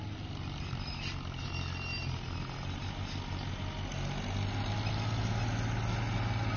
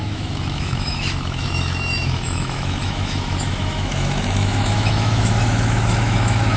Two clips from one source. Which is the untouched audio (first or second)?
first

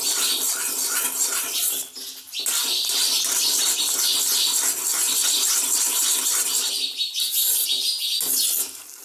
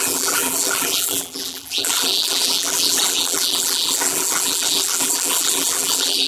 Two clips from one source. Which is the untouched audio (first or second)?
first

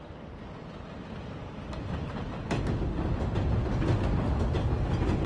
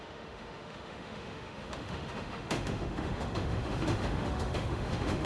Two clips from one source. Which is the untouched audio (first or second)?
first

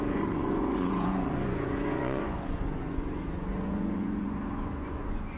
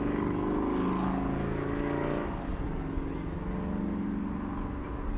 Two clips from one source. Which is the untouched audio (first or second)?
second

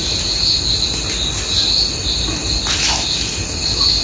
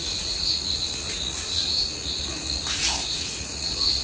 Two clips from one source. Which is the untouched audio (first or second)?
first